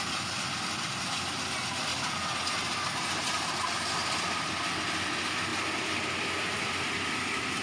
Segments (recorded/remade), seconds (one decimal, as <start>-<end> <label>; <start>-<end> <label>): 0.0-1.9 recorded; 1.9-2.4 remade; 2.4-4.0 recorded; 4.0-4.8 remade; 4.8-7.6 recorded